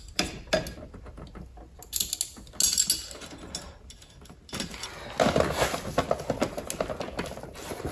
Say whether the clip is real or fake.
real